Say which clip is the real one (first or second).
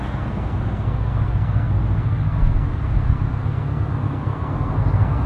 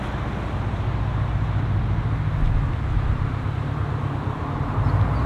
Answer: second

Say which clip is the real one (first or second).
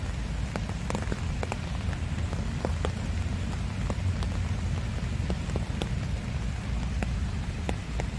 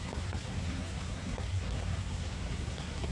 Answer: first